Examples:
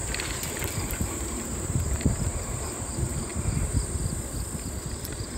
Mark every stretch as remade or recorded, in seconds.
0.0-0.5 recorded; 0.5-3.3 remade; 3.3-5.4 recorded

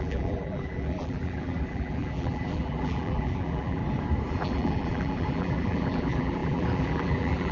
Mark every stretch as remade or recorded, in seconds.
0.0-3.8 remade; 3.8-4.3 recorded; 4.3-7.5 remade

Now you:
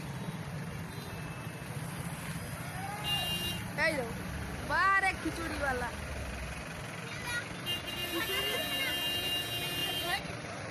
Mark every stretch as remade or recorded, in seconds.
0.0-9.8 recorded; 9.8-10.7 remade

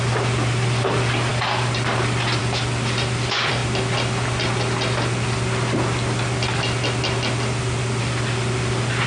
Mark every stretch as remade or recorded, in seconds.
0.0-3.6 remade; 3.6-8.0 recorded; 8.0-9.1 remade

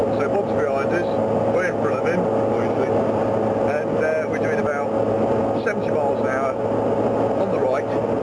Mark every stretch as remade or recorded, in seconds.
0.0-8.2 recorded

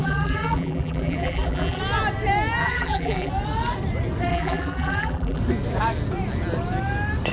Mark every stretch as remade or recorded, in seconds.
0.0-1.8 remade; 1.8-2.6 recorded; 2.6-3.3 remade; 3.3-4.3 recorded; 4.3-5.4 remade; 5.4-7.3 recorded

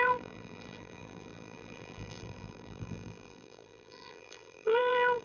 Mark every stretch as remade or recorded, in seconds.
0.0-5.2 remade

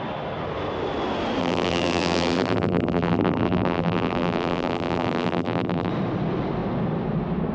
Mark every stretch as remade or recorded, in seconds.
0.0-1.4 recorded; 1.4-5.9 remade; 5.9-7.5 recorded